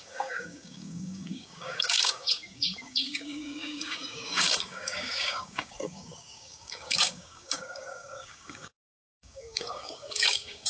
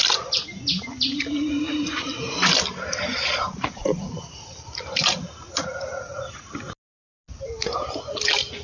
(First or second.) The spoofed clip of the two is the first